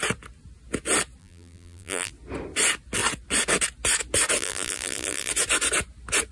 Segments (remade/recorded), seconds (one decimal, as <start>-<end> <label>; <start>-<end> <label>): 0.0-1.2 recorded; 1.2-2.1 remade; 2.1-4.4 recorded; 4.4-5.3 remade; 5.3-6.3 recorded